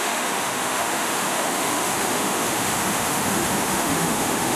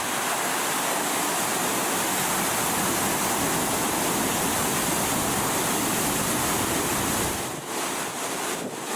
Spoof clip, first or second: first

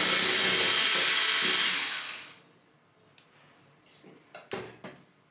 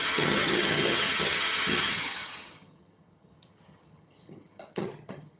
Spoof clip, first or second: second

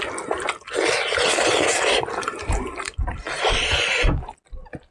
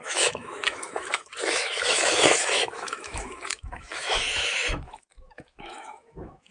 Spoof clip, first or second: second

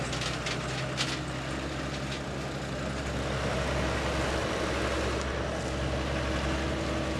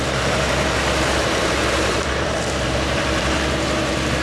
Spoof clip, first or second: second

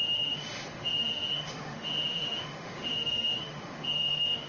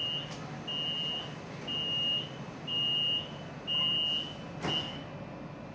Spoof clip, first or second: first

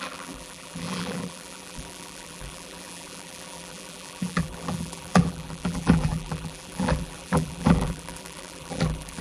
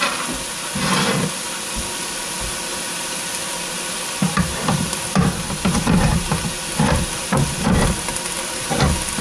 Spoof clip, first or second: first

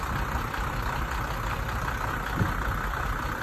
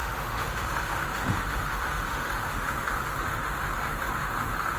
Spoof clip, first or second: second